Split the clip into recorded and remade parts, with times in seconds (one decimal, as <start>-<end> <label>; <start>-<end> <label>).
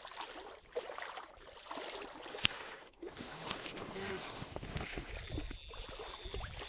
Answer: 0.0-2.3 recorded; 2.3-5.1 remade; 5.1-6.7 recorded